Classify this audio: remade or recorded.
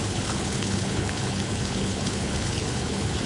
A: remade